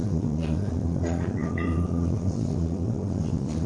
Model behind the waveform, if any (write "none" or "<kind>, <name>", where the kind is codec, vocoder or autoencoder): vocoder, Vocos